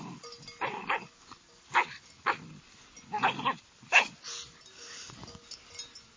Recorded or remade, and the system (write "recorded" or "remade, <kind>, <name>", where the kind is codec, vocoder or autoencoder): recorded